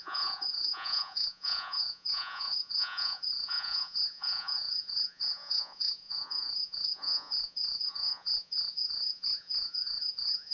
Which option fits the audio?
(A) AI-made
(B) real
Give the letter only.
A